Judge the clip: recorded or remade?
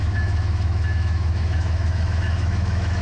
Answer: remade